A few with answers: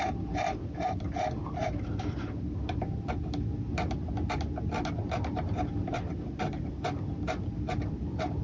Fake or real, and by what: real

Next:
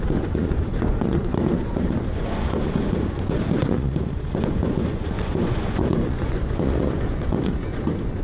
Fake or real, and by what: fake, vocoder, Vocos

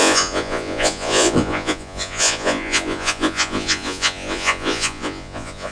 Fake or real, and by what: fake, vocoder, Vocos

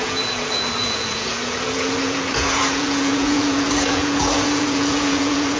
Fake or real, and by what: fake, vocoder, Vocos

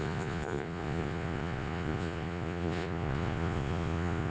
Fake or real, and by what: fake, vocoder, Vocos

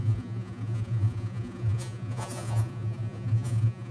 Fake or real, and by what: fake, vocoder, Vocos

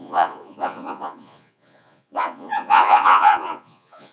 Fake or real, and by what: fake, vocoder, Vocos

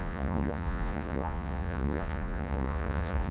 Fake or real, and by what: fake, vocoder, Vocos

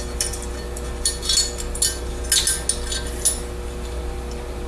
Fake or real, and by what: real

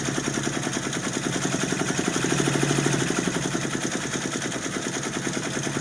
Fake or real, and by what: real